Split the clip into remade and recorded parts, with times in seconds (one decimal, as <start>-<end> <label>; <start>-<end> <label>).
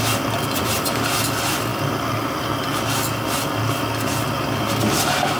0.0-5.4 recorded